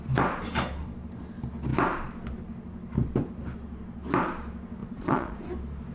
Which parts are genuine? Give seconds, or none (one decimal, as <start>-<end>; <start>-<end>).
0.0-4.8; 5.4-5.9